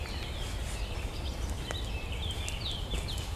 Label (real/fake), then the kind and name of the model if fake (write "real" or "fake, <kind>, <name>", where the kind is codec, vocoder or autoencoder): real